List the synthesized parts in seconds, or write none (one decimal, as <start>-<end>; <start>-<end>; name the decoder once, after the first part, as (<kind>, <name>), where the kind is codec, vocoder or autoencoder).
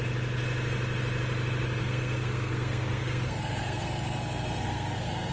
1.8-5.3 (codec, SNAC)